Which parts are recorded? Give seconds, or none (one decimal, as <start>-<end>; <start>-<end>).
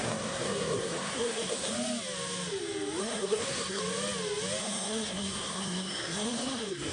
1.7-3.0; 3.8-4.6